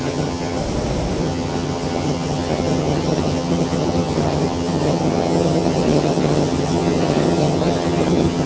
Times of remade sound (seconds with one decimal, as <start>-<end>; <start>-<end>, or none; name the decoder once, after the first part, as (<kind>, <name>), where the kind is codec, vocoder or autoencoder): 0.0-0.6 (vocoder, HiFi-GAN); 1.2-8.5